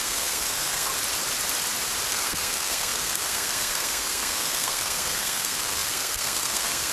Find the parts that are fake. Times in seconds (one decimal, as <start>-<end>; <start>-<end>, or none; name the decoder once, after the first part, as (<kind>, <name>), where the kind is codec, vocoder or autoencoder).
0.0-0.9 (codec, SNAC); 2.1-6.9